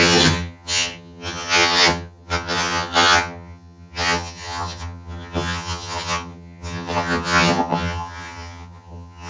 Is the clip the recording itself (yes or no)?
no